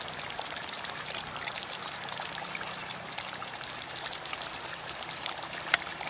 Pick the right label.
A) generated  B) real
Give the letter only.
A